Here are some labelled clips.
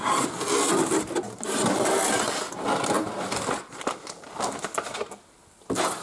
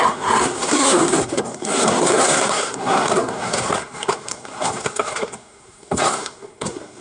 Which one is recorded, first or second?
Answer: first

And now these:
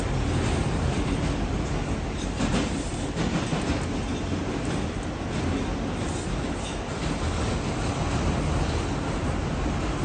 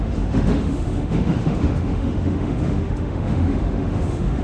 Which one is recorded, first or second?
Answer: first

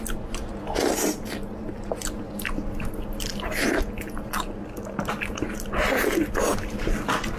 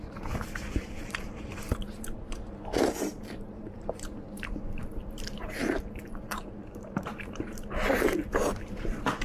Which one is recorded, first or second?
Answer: first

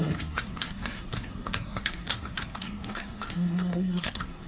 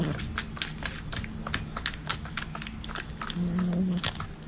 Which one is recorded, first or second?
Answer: second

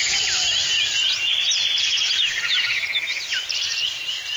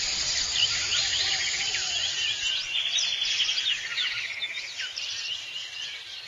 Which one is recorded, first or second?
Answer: first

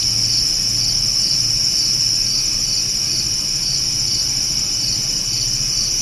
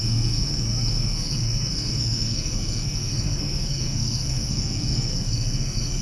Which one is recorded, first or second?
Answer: first